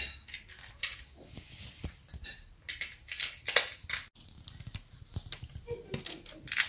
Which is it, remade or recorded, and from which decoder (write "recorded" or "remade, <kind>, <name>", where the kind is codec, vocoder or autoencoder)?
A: recorded